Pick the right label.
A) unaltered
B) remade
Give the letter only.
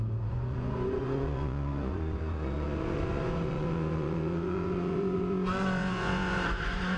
B